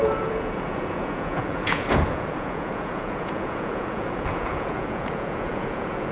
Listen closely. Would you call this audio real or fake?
fake